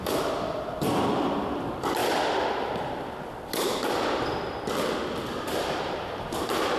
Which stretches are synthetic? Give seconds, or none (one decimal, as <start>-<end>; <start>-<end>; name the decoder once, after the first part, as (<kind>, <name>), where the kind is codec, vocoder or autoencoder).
0.0-2.0 (vocoder, BigVGAN v2); 5.7-6.8